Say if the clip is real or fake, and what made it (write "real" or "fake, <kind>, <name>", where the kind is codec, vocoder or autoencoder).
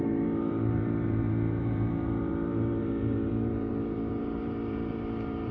fake, vocoder, BigVGAN v2